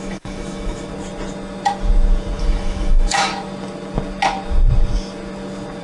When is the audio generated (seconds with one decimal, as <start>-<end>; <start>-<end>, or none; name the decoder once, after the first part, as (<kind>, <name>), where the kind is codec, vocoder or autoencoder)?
0.0-0.9 (autoencoder, DAC-VAE); 2.4-3.3

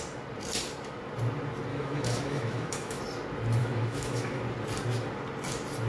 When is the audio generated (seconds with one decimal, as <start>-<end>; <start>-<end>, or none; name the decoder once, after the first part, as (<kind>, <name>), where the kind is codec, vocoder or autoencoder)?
1.7-3.0 (autoencoder, DAC-VAE); 3.6-4.4

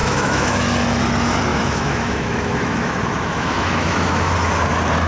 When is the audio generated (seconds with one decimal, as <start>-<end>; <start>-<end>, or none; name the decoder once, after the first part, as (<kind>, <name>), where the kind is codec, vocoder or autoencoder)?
0.0-0.6 (autoencoder, DAC-VAE); 1.5-4.3